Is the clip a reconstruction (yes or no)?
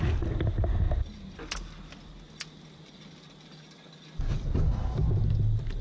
no